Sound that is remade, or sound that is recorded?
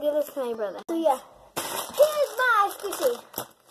recorded